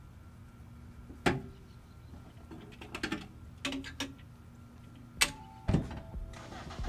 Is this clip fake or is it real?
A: real